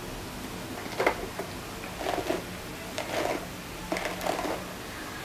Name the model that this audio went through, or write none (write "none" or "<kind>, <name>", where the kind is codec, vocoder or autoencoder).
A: none